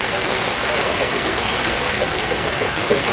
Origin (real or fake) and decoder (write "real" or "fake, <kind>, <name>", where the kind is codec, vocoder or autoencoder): fake, codec, SNAC